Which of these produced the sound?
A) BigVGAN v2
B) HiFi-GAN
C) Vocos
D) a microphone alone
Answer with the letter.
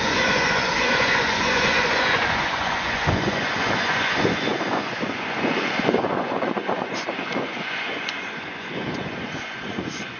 C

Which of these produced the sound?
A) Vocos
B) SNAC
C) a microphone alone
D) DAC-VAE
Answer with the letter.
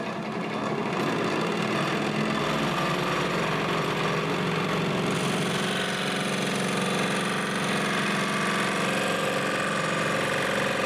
C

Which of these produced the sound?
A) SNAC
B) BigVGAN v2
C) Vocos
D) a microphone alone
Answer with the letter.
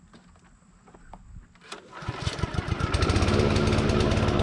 D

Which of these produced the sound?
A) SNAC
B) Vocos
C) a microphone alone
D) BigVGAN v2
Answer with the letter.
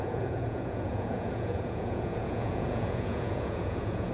B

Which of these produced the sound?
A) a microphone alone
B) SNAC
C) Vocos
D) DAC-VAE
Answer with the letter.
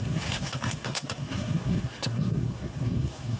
B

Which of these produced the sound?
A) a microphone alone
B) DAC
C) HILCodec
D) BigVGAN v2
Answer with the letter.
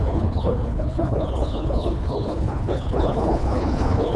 C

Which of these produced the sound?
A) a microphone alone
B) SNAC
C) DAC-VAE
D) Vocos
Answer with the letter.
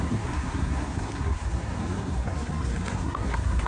B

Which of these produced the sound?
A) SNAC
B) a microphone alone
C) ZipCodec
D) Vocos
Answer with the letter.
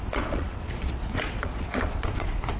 D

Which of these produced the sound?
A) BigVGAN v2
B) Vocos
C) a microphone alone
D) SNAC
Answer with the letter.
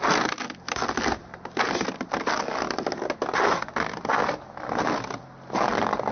C